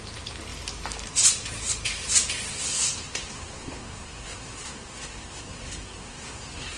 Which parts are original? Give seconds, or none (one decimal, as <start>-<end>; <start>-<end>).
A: 0.0-2.5